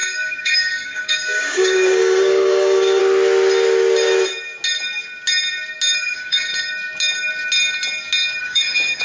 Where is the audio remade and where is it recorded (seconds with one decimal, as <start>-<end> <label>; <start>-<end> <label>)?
0.0-3.0 remade; 3.0-6.0 recorded; 6.0-6.5 remade; 6.5-8.4 recorded; 8.4-9.0 remade